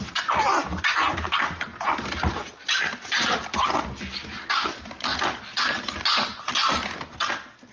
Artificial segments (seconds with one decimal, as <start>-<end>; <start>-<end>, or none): none